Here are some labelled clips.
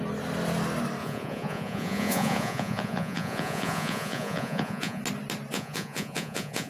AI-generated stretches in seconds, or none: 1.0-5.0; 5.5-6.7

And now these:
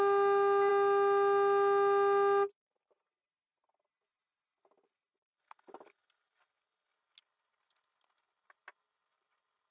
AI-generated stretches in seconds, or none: none

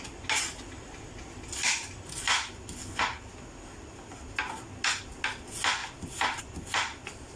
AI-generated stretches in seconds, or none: none

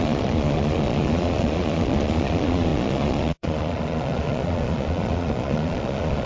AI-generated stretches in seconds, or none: 0.0-6.3

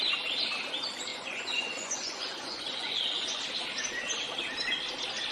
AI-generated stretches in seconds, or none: 1.1-3.4

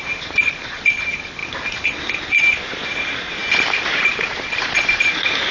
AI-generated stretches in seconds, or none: 0.0-1.4; 2.1-3.4; 4.1-5.5